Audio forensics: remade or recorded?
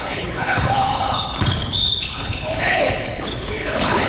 remade